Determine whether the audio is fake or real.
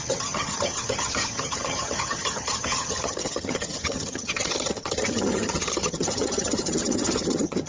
fake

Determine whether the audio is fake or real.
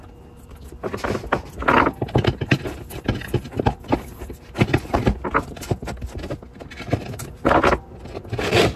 real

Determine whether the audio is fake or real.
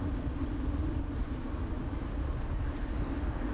real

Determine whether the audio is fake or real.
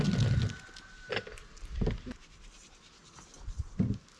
real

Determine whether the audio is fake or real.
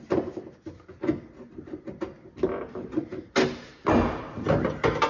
real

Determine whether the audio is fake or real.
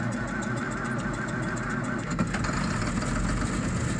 real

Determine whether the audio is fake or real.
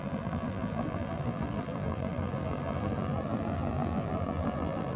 fake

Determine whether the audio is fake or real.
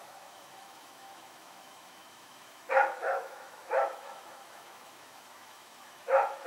fake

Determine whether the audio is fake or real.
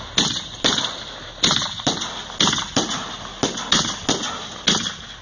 real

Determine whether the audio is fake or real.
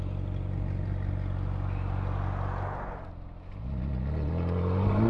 real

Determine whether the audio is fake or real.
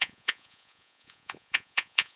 fake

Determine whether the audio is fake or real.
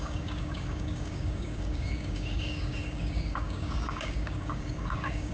fake